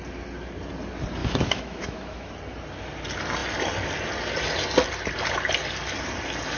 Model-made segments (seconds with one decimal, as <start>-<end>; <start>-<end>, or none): 1.2-2.3